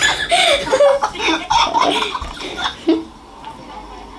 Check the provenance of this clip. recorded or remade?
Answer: recorded